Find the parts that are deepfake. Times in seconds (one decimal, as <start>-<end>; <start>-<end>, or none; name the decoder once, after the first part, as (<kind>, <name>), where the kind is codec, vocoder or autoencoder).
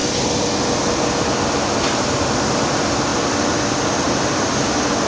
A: none